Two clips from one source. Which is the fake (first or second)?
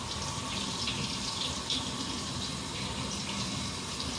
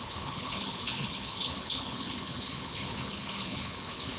second